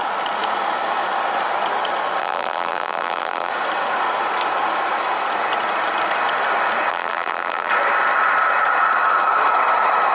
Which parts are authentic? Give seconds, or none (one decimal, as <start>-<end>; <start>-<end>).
0.0-2.2; 3.5-6.9; 7.7-10.1